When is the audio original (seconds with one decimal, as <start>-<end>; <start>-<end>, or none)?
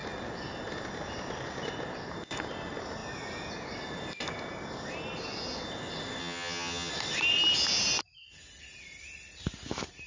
0.0-6.2; 6.9-10.1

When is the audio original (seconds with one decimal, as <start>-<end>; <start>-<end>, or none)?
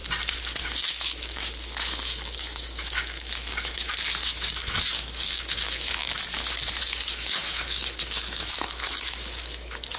0.0-0.6; 6.0-6.8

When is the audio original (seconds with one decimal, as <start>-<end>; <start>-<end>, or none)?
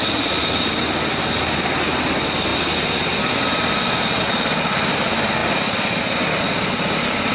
0.0-7.3